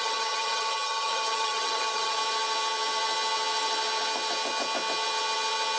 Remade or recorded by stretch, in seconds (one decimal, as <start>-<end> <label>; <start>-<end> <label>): 0.0-2.2 remade; 2.2-5.8 recorded